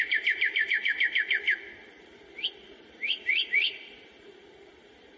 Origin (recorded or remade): remade